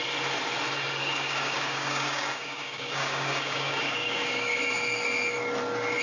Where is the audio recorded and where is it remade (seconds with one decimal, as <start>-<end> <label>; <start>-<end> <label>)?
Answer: 0.0-1.0 recorded; 1.0-4.6 remade; 4.6-6.0 recorded